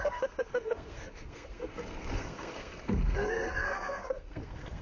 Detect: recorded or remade remade